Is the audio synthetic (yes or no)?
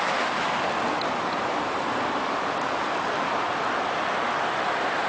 yes